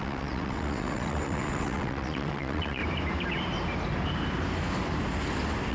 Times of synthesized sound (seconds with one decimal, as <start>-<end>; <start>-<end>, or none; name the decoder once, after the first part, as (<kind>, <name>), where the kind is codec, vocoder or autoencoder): 0.0-2.8 (vocoder, WaveNeXt)